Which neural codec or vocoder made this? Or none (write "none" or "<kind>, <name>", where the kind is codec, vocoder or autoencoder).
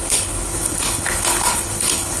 codec, HILCodec